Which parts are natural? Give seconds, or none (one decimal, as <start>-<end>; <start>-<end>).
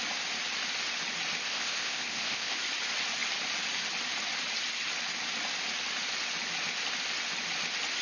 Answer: 0.0-1.4; 2.6-8.0